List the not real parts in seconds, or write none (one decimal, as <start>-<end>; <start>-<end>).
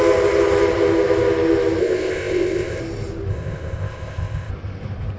1.8-2.8; 3.3-4.5